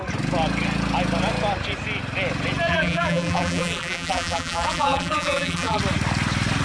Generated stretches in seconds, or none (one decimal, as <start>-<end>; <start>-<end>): 2.7-5.8